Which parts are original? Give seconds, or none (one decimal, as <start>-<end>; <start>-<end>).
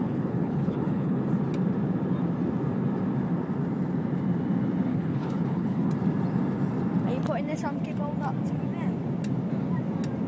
1.2-4.9; 5.9-10.3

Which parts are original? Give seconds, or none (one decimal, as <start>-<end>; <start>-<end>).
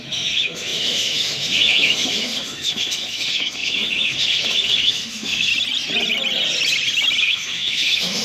5.5-7.2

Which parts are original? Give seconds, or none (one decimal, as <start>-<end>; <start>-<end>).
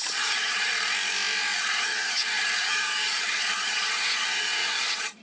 0.7-1.6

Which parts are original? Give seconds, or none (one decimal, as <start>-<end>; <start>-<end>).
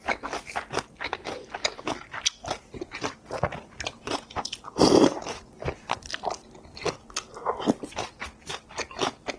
0.0-3.5; 6.0-9.4